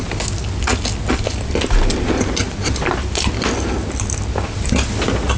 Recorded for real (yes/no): yes